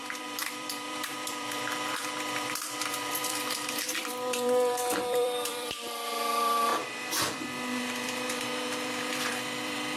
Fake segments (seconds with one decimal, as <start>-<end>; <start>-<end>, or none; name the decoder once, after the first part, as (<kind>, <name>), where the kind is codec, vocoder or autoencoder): 0.0-10.0 (vocoder, BigVGAN v2)